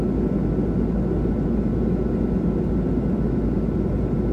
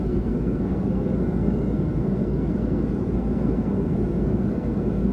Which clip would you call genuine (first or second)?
first